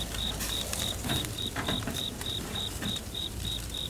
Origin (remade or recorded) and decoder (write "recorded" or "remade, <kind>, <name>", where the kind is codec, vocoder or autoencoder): remade, vocoder, BigVGAN v2